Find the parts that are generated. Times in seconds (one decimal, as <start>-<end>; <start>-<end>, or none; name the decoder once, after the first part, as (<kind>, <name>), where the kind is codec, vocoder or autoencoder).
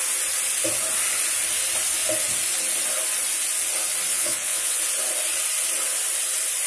4.1-4.8 (vocoder, Vocos)